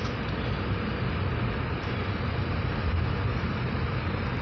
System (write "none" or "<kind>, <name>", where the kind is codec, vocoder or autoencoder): none